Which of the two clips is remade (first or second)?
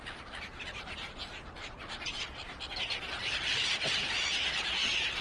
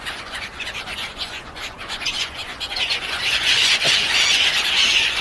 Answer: second